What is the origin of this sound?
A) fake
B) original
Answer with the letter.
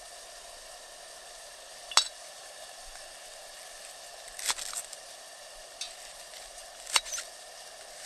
B